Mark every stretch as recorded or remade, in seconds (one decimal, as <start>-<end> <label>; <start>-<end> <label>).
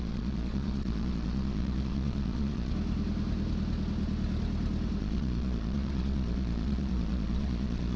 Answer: 0.0-2.7 remade; 2.7-5.0 recorded; 5.0-8.0 remade